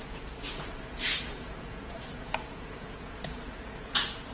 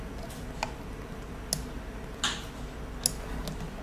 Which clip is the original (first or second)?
second